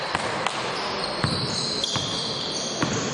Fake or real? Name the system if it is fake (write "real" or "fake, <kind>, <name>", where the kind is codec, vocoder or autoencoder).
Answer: real